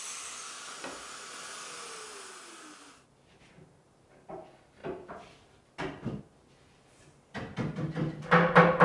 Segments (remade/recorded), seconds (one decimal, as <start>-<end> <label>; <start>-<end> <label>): 0.0-8.8 recorded